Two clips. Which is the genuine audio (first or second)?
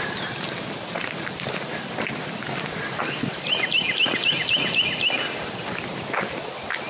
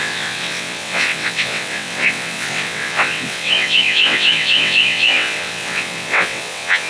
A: first